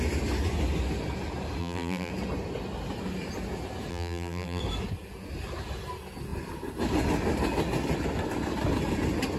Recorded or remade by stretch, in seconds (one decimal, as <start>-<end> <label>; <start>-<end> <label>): 0.0-1.6 recorded; 1.6-2.1 remade; 2.1-3.9 recorded; 3.9-4.6 remade; 4.6-9.4 recorded